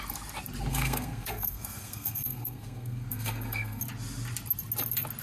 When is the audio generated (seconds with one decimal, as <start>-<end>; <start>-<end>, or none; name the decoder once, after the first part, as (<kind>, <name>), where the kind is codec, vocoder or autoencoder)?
0.7-3.8 (codec, SNAC)